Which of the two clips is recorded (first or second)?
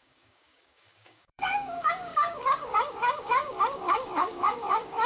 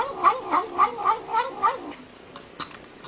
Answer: second